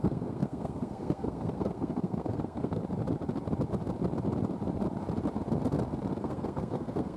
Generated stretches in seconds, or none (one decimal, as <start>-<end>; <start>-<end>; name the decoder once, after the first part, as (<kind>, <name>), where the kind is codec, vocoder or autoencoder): 0.0-2.8 (codec, SNAC); 6.2-7.2